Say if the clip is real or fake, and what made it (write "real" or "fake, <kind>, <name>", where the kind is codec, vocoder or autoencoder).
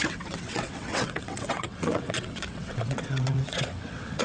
fake, vocoder, WaveNeXt